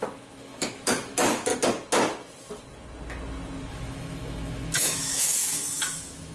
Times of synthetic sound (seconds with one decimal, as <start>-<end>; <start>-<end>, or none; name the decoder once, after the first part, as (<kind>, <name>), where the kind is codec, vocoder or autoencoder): 0.0-1.5 (autoencoder, DAC-VAE); 3.7-6.3